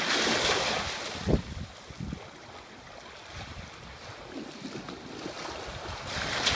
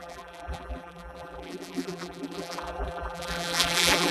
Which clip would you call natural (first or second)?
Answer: first